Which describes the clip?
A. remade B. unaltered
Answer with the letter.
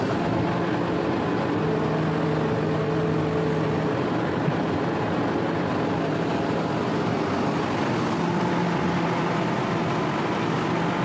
B